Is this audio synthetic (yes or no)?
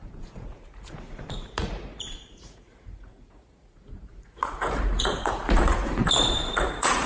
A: yes